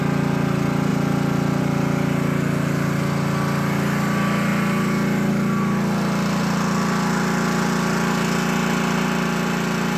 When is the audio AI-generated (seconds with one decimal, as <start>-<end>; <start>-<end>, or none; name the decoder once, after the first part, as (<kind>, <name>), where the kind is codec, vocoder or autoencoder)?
none